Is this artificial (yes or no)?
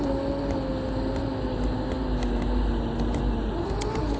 no